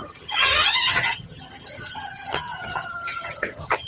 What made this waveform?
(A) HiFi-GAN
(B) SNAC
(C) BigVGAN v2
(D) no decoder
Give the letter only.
A